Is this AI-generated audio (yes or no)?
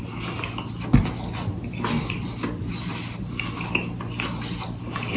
no